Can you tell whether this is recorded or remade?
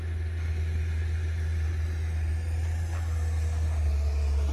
recorded